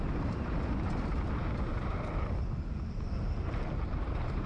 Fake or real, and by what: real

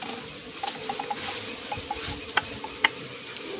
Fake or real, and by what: real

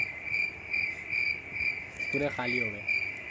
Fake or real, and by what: real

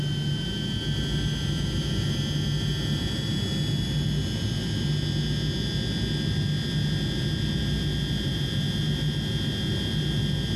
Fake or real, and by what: real